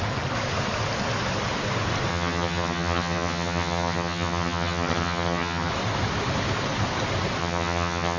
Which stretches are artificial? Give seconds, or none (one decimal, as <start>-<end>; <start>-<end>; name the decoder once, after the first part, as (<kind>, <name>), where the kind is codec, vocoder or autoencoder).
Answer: 2.1-5.7 (vocoder, HiFi-GAN); 7.4-8.2